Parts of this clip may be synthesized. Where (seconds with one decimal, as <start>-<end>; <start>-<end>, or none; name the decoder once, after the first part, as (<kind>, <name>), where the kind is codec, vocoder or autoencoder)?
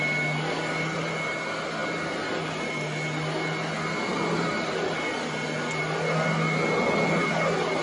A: none